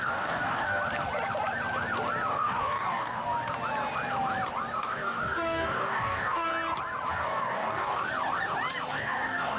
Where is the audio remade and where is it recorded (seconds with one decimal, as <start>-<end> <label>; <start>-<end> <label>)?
0.0-0.8 remade; 0.8-2.3 recorded; 2.3-3.2 remade; 3.2-4.8 recorded; 4.8-6.5 remade; 6.5-7.1 recorded; 7.1-8.0 remade; 8.0-8.9 recorded; 8.9-9.6 remade